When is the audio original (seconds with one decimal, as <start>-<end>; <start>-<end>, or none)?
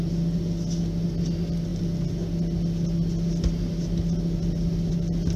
0.0-5.4